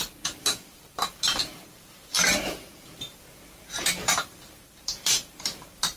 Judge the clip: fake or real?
fake